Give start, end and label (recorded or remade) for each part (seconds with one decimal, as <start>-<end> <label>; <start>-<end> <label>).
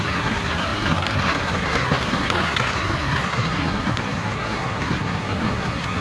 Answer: 0.0-6.0 remade